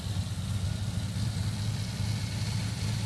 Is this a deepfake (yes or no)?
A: no